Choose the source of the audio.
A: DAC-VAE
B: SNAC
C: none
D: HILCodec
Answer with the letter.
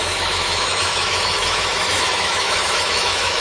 A